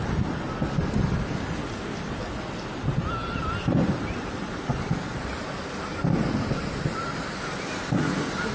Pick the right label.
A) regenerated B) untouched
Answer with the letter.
B